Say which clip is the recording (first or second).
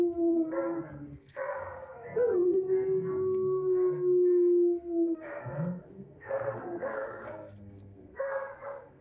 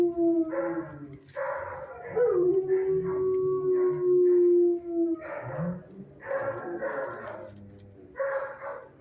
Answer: second